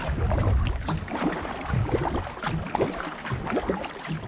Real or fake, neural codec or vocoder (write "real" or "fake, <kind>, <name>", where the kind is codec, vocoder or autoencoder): real